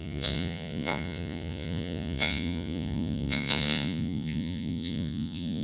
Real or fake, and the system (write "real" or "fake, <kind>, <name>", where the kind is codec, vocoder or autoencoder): fake, vocoder, Vocos